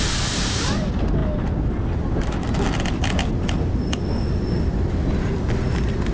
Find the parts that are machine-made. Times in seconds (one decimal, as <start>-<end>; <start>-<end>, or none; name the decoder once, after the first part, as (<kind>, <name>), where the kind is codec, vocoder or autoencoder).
none